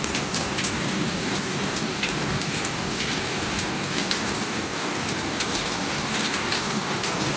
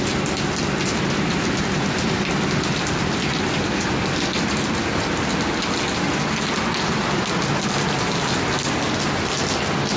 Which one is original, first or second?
second